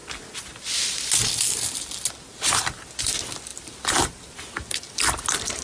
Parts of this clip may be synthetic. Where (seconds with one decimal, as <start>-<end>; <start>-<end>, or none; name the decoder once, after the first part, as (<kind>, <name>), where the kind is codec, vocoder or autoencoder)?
3.5-4.4 (vocoder, BigVGAN v2)